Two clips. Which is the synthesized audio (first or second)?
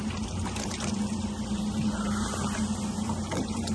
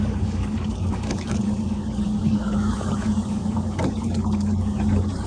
second